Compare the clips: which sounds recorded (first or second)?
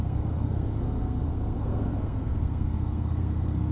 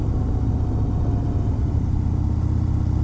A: second